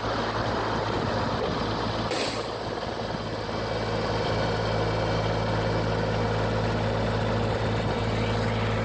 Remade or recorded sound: recorded